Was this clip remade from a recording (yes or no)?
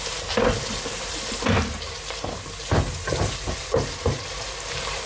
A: no